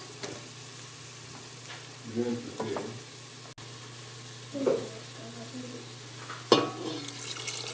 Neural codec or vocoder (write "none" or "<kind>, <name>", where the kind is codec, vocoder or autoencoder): none